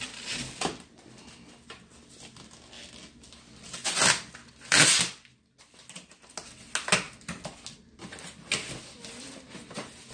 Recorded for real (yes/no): yes